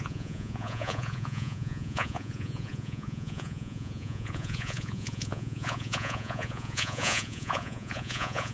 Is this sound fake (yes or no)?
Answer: yes